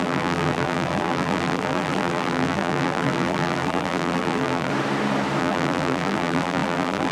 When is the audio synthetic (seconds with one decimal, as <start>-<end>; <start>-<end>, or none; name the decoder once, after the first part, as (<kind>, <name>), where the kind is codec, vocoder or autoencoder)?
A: 0.0-4.7 (vocoder, BigVGAN v2); 5.4-7.1